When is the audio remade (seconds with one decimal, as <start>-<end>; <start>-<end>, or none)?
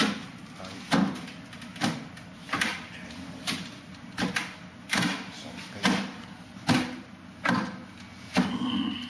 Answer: none